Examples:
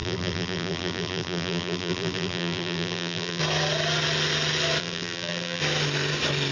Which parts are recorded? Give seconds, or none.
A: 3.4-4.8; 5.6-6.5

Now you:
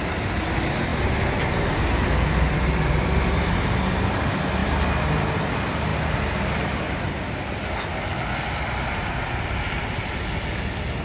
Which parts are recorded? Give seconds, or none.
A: 0.0-11.0

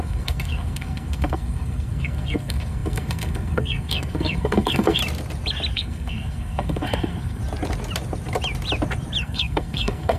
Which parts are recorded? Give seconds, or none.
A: 5.0-5.7; 7.4-9.2

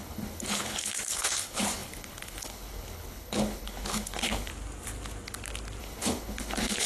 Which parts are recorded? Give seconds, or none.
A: 4.5-5.8

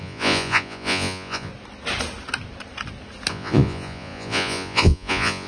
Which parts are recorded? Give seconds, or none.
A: 1.5-3.3